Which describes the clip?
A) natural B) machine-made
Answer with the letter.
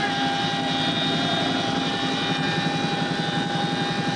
A